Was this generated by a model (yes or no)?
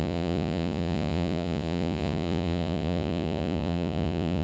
yes